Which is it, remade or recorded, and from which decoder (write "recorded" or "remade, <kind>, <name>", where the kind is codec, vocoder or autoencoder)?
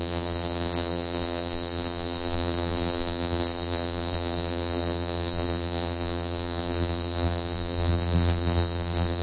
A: remade, vocoder, BigVGAN v2